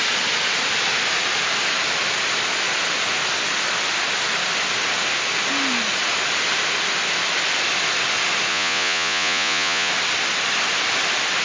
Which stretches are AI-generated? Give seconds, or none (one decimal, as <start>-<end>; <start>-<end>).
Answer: 8.5-9.9

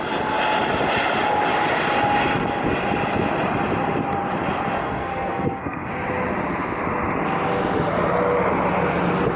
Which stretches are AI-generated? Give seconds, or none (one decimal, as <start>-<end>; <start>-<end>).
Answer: 4.8-5.9

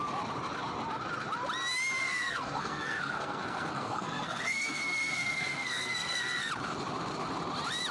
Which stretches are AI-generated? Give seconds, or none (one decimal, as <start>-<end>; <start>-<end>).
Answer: 2.0-6.5

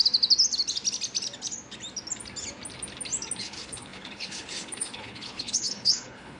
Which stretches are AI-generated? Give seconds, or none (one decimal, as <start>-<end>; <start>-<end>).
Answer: 3.4-6.4

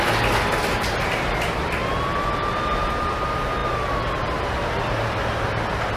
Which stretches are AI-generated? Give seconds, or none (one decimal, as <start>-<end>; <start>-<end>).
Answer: none